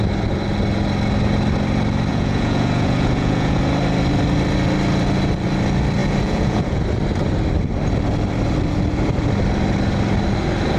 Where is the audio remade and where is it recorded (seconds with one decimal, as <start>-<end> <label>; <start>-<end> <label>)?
0.0-2.1 recorded; 2.1-3.6 remade; 3.6-6.0 recorded; 6.0-6.8 remade; 6.8-10.8 recorded

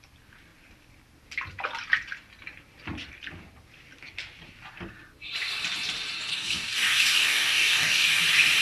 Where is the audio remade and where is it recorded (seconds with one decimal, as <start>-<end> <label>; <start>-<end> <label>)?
0.0-6.3 recorded; 6.3-8.2 remade; 8.2-8.6 recorded

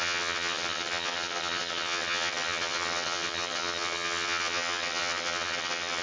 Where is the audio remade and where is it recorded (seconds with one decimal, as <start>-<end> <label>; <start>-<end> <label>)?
0.0-6.0 remade

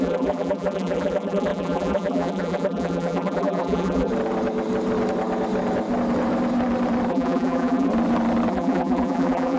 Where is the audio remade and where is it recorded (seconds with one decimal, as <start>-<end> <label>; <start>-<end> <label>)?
0.0-4.1 remade; 4.1-7.1 recorded; 7.1-7.9 remade; 7.9-8.5 recorded; 8.5-9.6 remade